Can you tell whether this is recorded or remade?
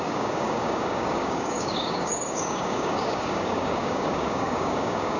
remade